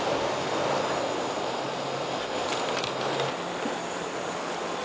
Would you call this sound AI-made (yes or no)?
no